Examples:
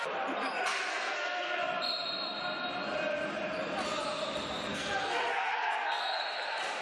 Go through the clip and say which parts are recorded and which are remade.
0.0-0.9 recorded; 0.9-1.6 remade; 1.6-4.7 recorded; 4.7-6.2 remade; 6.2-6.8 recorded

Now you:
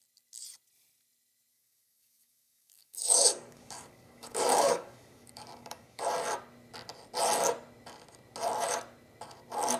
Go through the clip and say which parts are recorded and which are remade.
0.0-1.5 recorded; 1.5-6.0 remade; 6.0-9.8 recorded

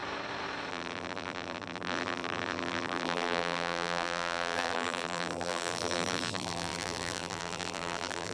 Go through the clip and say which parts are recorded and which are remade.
0.0-0.7 recorded; 0.7-8.3 remade

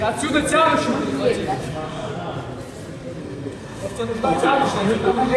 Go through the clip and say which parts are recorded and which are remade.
0.0-1.6 recorded; 1.6-2.1 remade; 2.1-3.2 recorded; 3.2-5.4 remade